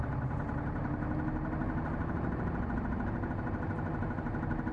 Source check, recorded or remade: recorded